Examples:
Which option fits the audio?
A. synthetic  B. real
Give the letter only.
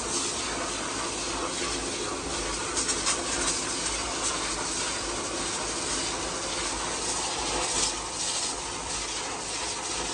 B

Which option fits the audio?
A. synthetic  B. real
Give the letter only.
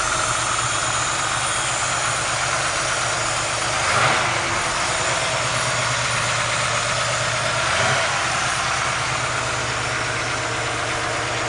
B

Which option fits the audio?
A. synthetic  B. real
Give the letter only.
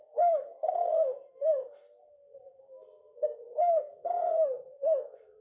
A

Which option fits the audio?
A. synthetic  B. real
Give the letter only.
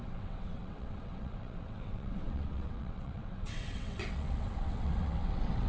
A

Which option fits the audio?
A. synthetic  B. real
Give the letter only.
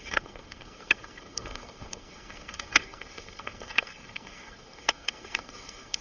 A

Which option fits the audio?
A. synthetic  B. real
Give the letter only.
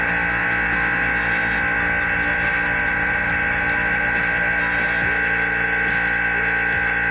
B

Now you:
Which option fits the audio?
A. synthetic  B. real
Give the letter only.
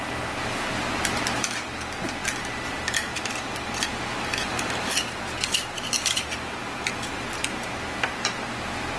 B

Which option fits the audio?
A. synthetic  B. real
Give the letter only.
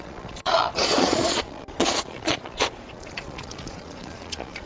A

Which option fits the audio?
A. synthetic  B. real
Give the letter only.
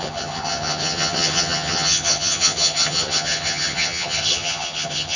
A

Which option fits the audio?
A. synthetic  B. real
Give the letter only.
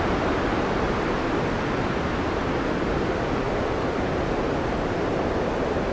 B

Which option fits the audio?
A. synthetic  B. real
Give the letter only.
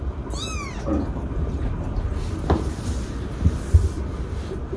B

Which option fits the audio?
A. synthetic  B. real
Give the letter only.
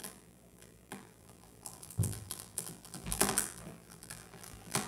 A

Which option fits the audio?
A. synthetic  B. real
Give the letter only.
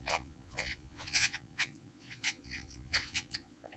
A